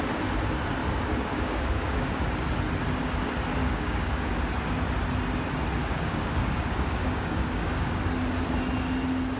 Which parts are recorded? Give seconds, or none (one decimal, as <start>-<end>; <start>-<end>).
0.0-0.8; 2.2-3.6; 4.3-5.8; 8.0-9.4